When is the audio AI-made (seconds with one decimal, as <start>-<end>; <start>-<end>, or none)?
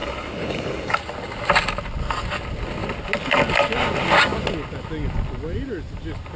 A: 0.0-1.0